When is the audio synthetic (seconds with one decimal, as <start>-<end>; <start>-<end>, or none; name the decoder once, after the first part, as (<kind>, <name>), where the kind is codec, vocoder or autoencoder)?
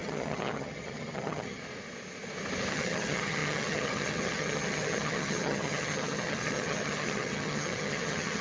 0.0-1.6 (vocoder, HiFi-GAN); 2.7-8.4